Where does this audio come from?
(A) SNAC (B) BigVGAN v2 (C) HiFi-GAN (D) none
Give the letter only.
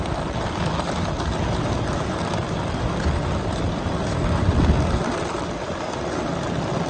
D